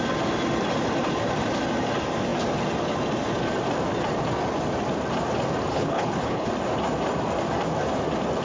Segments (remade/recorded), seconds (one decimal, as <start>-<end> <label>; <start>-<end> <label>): 0.0-5.7 recorded; 5.7-6.5 remade; 6.5-8.4 recorded